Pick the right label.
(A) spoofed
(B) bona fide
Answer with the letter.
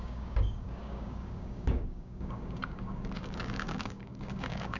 A